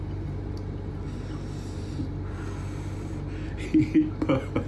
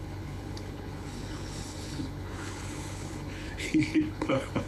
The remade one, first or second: second